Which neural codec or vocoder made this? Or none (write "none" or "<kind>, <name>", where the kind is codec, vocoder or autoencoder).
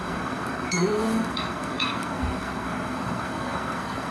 codec, SNAC